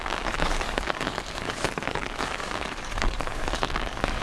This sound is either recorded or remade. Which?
remade